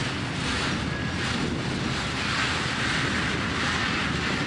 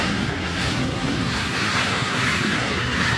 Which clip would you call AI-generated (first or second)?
second